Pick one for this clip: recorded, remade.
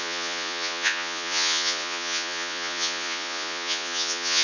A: remade